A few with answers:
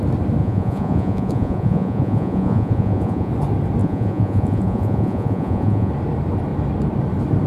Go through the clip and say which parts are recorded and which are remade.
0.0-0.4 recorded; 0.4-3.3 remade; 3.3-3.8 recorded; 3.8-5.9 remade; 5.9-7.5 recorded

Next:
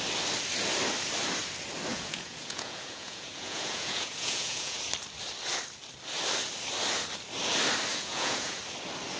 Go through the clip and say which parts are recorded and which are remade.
0.0-1.9 recorded; 1.9-4.8 remade; 4.8-7.9 recorded; 7.9-8.6 remade; 8.6-9.2 recorded